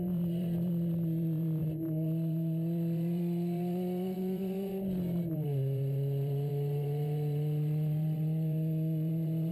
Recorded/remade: remade